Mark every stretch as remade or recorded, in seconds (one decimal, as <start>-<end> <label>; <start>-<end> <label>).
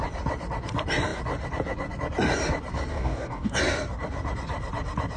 0.0-2.9 recorded; 2.9-3.6 remade; 3.6-5.2 recorded